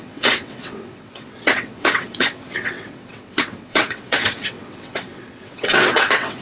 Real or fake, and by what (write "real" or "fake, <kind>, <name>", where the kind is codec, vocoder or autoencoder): fake, vocoder, WaveNeXt